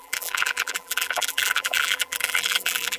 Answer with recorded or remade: remade